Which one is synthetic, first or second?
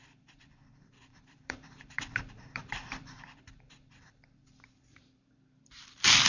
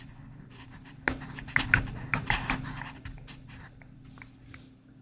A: first